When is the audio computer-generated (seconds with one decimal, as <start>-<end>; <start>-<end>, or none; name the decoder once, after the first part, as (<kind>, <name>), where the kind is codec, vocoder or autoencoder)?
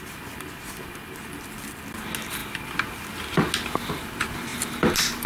none